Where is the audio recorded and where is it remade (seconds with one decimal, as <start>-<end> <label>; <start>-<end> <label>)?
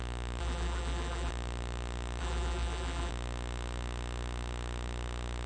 0.0-0.4 recorded; 0.4-1.3 remade; 1.3-2.2 recorded; 2.2-3.1 remade; 3.1-5.5 recorded